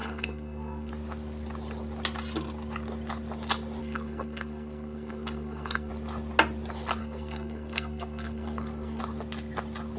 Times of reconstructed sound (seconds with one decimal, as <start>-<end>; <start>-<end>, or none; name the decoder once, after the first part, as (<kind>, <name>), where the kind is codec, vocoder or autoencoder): 0.0-0.9 (codec, SNAC); 3.8-5.9; 7.0-9.0